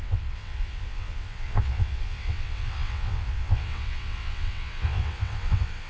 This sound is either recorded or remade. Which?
remade